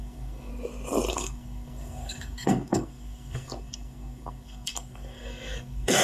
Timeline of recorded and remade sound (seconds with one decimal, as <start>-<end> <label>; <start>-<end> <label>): 0.0-0.5 remade; 0.5-1.1 recorded; 1.1-6.0 remade

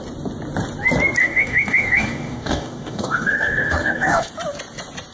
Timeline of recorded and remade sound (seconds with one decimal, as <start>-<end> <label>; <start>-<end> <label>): 0.0-1.2 recorded; 1.2-4.3 remade; 4.3-5.1 recorded

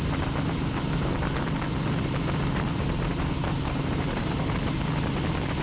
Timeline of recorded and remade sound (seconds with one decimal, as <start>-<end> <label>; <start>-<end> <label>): 0.0-2.7 recorded; 2.7-4.8 remade; 4.8-5.6 recorded

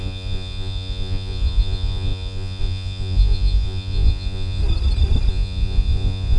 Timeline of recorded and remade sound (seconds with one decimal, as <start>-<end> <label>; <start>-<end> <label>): 0.0-4.6 remade; 4.6-5.3 recorded; 5.3-6.4 remade